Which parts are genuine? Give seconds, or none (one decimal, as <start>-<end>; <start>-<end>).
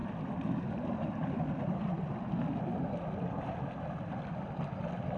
0.0-5.2